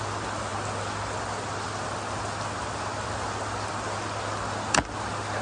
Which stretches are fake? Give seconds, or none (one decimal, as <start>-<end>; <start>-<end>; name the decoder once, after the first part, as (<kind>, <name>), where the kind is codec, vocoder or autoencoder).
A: none